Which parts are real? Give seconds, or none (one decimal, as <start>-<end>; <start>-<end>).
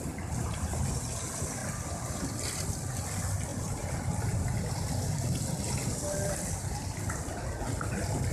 0.0-8.3